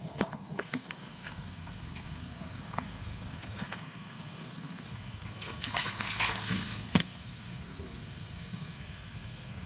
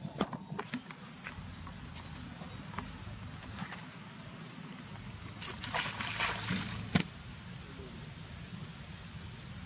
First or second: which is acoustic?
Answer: second